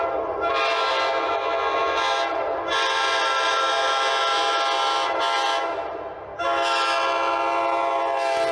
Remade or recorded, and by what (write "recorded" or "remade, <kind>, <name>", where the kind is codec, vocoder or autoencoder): recorded